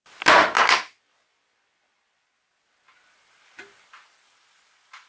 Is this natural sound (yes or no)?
yes